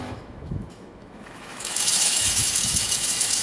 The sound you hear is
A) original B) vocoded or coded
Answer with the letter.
B